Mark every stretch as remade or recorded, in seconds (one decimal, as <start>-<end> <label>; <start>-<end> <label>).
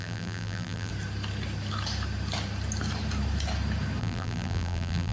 0.0-0.9 remade; 0.9-4.0 recorded; 4.0-5.1 remade